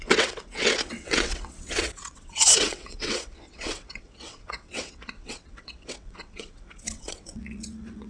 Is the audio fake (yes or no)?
yes